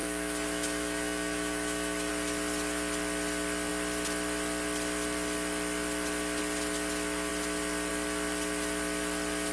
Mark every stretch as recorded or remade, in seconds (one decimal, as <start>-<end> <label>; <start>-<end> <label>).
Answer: 0.0-2.1 remade; 2.1-9.5 recorded